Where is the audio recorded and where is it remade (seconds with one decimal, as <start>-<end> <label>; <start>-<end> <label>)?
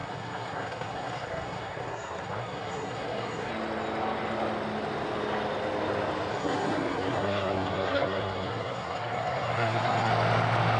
0.0-3.5 remade; 3.5-6.3 recorded; 6.3-10.1 remade; 10.1-10.8 recorded